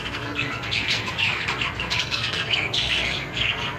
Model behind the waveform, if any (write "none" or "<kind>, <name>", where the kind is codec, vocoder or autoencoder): codec, SNAC